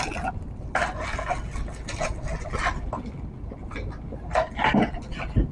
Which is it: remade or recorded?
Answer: recorded